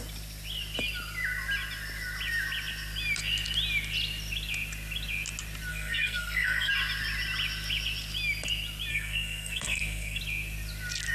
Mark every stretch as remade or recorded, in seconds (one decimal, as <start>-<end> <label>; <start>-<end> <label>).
0.0-5.7 recorded; 5.7-6.7 remade; 6.7-8.9 recorded; 8.9-10.2 remade; 10.2-11.1 recorded